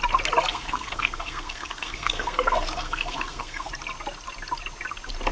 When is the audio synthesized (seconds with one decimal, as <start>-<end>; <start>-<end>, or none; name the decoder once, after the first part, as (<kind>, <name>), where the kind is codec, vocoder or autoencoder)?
0.5-3.7 (codec, SNAC)

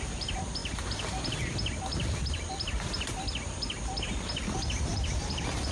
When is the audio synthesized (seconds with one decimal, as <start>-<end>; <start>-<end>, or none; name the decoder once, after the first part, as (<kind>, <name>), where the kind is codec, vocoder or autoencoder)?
none

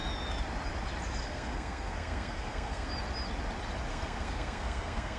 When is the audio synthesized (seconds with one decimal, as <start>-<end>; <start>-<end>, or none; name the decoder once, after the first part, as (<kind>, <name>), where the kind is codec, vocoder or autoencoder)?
1.2-2.9 (codec, SNAC); 3.9-5.2